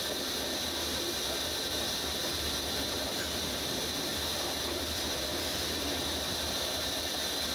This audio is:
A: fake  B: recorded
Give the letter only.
B